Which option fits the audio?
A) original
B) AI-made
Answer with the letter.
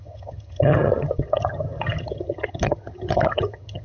B